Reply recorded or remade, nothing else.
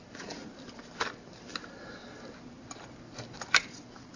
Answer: recorded